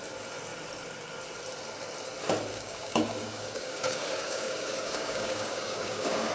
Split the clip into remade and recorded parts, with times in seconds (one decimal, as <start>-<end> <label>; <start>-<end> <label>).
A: 0.0-2.5 recorded; 2.5-6.3 remade